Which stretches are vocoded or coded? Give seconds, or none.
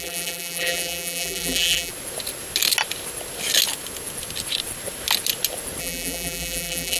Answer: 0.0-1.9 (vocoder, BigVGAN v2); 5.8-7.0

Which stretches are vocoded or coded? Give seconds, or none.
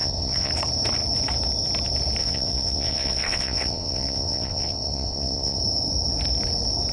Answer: 0.0-0.5 (vocoder, WaveNeXt); 2.2-5.6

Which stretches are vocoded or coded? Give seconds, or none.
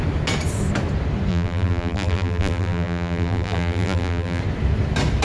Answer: 1.3-4.4 (vocoder, BigVGAN v2)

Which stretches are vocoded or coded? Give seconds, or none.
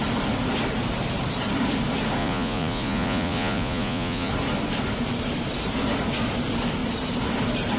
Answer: 2.2-4.3 (vocoder, Vocos)